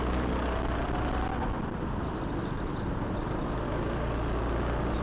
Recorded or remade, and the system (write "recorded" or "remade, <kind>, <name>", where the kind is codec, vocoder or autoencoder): recorded